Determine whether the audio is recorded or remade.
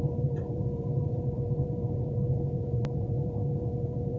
remade